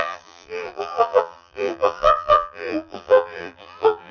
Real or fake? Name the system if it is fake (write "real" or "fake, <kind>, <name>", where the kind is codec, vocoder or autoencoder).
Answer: fake, vocoder, BigVGAN v2